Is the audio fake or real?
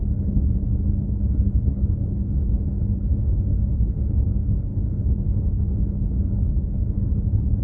fake